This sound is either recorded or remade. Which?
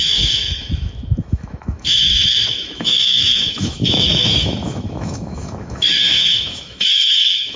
remade